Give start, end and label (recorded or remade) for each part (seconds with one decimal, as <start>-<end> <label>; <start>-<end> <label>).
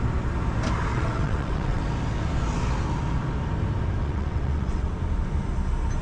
0.0-0.9 recorded; 0.9-1.8 remade; 1.8-4.0 recorded; 4.0-4.9 remade; 4.9-6.0 recorded